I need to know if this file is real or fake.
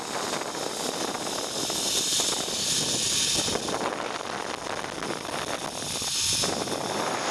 real